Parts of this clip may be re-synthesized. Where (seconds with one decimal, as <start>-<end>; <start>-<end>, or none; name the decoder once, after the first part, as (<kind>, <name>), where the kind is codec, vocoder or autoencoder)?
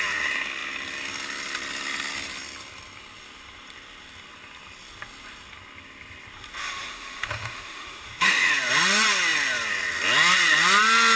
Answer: 6.6-8.5 (autoencoder, DAC-VAE)